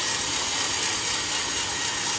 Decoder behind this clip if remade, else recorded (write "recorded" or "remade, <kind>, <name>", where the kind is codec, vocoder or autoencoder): recorded